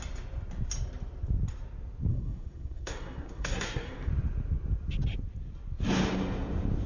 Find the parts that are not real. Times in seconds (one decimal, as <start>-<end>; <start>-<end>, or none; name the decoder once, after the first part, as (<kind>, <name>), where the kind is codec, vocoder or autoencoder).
2.1-4.1 (codec, SNAC)